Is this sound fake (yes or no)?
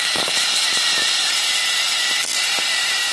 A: no